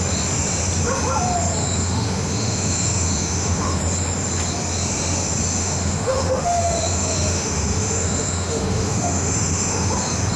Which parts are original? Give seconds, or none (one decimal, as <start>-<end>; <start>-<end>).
0.0-1.6; 3.8-5.6; 9.9-10.4